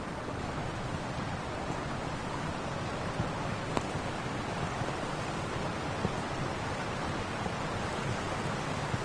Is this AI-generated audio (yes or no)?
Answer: no